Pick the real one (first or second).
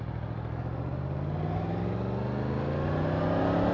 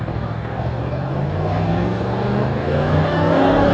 first